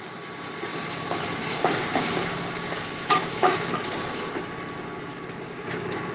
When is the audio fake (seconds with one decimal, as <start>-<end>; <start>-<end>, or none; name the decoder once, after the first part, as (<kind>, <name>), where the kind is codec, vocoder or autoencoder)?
0.7-4.4 (codec, DAC); 5.1-6.1